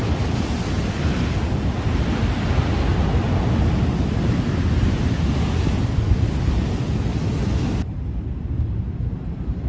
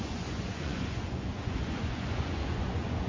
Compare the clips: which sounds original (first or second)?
first